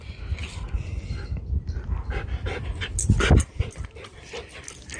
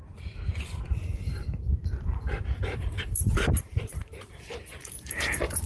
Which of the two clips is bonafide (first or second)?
first